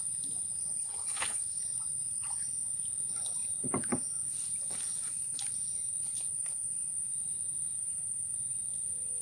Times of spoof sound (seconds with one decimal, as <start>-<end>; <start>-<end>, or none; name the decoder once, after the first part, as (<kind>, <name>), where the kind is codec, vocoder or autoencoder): 0.8-1.6 (codec, HILCodec)